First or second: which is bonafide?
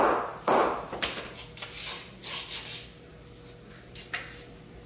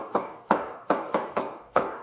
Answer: first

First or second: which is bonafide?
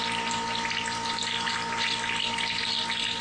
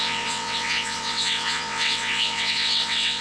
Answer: first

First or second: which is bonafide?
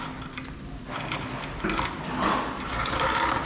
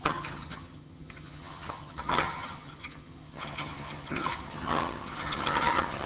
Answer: first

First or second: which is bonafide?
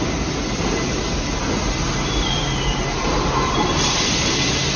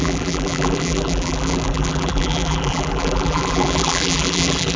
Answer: first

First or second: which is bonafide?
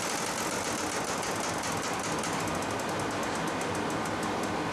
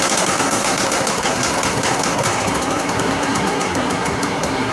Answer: first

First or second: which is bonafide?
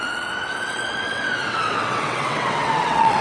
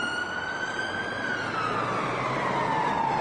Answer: second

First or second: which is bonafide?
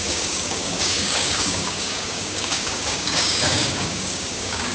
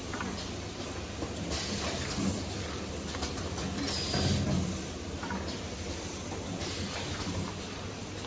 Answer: second